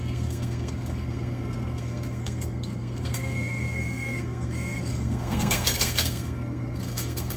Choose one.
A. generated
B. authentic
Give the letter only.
A